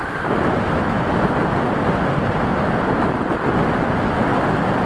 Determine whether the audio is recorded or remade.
recorded